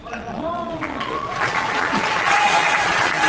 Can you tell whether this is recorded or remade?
remade